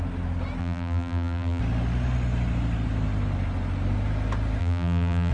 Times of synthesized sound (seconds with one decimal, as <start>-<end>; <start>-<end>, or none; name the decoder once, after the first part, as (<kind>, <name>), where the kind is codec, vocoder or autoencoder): 0.6-1.6 (vocoder, BigVGAN v2); 4.6-5.3